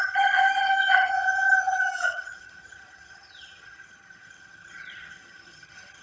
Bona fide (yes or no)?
no